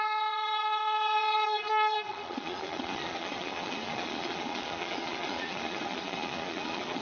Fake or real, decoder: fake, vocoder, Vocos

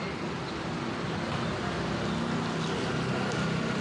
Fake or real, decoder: real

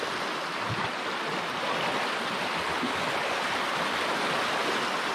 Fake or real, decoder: real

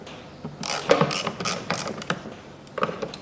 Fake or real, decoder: real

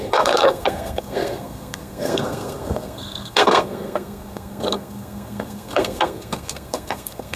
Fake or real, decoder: fake, codec, SNAC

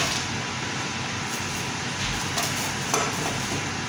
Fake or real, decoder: real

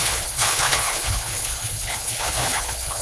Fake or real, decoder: fake, codec, HILCodec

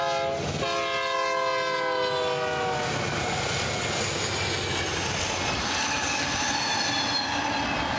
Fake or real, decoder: real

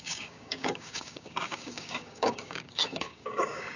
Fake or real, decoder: fake, codec, DAC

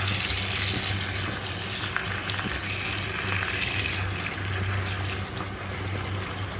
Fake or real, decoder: real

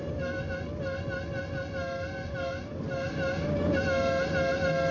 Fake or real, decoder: real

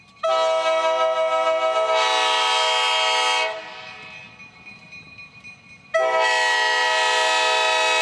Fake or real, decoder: real